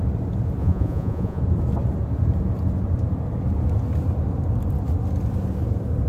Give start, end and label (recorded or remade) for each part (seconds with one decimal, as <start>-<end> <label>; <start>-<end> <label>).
0.0-0.6 recorded; 0.6-1.4 remade; 1.4-6.1 recorded

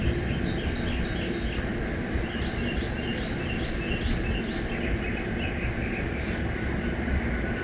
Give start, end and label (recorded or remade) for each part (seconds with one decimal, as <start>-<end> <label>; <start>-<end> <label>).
0.0-7.6 recorded